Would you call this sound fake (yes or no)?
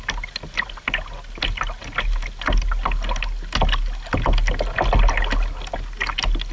no